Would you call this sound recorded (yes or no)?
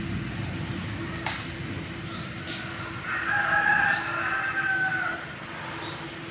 yes